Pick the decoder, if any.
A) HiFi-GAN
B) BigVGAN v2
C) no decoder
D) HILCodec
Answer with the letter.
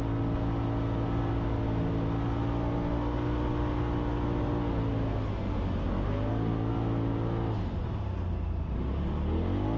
C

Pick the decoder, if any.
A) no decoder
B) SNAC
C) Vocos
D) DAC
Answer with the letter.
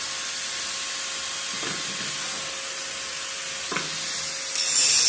A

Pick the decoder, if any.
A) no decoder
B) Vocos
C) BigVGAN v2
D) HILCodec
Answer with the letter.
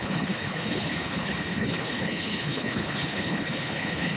D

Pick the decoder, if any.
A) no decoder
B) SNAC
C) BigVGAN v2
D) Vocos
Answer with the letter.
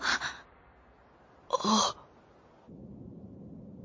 A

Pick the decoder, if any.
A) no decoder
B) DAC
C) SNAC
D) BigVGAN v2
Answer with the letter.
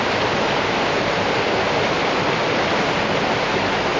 A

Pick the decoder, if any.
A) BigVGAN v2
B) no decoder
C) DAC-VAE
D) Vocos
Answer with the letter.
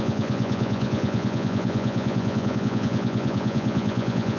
D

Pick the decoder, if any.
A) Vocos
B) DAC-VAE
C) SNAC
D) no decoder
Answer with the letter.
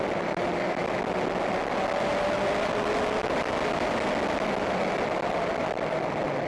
D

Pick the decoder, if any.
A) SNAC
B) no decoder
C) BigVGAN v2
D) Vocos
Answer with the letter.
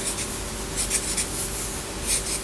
B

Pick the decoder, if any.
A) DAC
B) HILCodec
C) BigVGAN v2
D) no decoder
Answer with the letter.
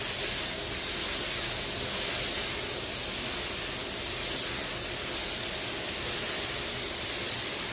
D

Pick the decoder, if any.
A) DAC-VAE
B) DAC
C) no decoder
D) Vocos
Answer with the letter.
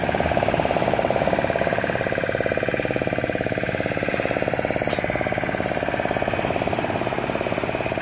C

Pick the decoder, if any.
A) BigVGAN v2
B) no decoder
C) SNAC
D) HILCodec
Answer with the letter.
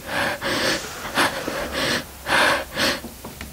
B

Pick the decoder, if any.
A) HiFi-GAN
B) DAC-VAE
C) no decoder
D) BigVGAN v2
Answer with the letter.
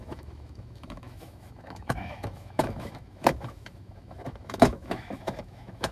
B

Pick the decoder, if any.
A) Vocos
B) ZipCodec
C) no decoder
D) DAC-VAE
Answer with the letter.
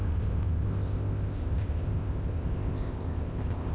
B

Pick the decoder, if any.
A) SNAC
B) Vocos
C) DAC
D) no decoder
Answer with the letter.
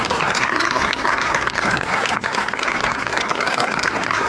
A